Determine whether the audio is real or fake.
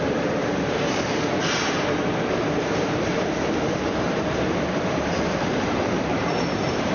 fake